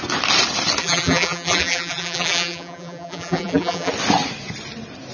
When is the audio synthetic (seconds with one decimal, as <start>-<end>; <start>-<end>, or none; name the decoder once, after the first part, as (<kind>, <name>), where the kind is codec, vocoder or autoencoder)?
0.8-3.9 (vocoder, BigVGAN v2)